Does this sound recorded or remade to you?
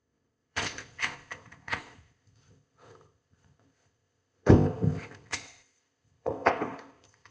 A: remade